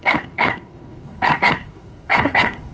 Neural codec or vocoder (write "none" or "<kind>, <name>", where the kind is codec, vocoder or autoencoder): codec, SNAC